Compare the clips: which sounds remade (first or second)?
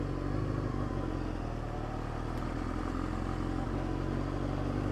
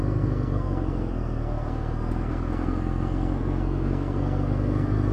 second